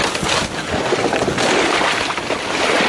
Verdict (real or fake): real